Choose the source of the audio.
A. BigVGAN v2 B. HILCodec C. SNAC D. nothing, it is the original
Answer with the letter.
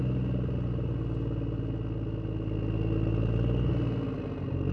D